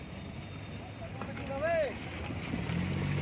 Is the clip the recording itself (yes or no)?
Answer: yes